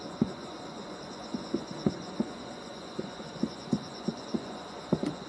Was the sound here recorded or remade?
remade